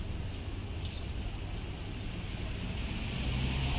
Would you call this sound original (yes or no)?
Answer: yes